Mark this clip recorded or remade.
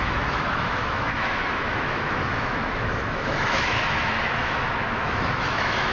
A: remade